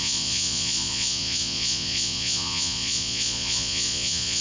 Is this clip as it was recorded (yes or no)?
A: no